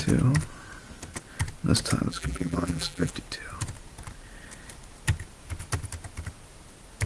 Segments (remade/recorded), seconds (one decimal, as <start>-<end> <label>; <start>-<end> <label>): 0.0-2.1 recorded; 2.1-3.1 remade; 3.1-7.1 recorded